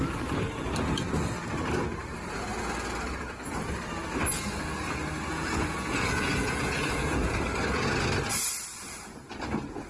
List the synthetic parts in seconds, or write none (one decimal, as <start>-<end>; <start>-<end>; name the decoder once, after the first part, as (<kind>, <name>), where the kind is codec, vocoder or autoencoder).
5.3-7.3 (vocoder, Vocos)